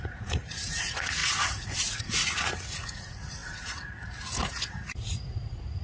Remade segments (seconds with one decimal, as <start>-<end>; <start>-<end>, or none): 0.0-5.8